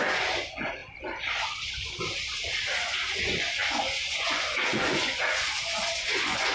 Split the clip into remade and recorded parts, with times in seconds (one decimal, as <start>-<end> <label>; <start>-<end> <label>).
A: 0.0-0.8 remade; 0.8-2.8 recorded; 2.8-6.5 remade